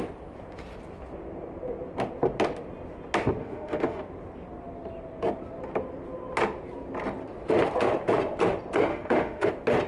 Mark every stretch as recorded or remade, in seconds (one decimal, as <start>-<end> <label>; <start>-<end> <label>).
0.0-3.4 recorded; 3.4-4.0 remade; 4.0-8.9 recorded; 8.9-9.5 remade; 9.5-9.9 recorded